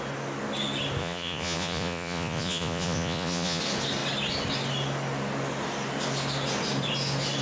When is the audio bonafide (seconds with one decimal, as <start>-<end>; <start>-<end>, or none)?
0.0-1.0; 3.6-7.4